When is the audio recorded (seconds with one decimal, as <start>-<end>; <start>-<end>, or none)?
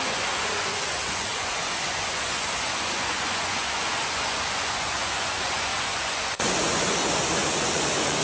none